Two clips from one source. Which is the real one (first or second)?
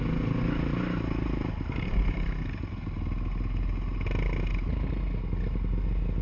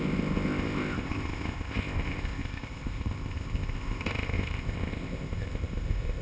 first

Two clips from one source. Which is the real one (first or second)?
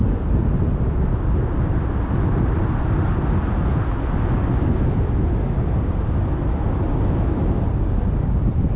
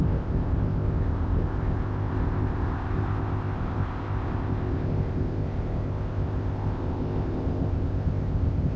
first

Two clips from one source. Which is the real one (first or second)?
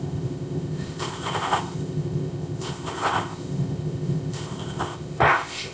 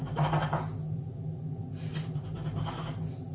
second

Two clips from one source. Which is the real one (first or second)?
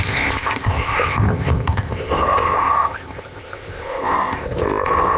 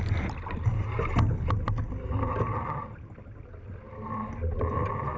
second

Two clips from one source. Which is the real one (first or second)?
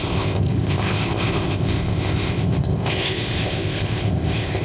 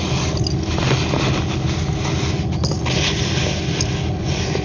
second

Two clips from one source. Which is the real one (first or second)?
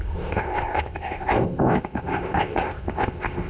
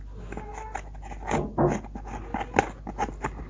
second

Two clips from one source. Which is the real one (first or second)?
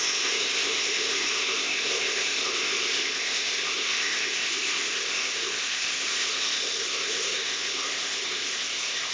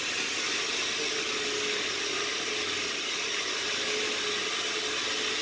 second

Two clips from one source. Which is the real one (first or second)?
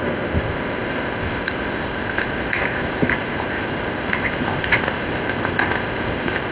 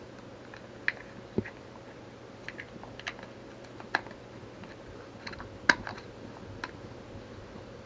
second